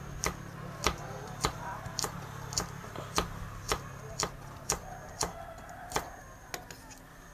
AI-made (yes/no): no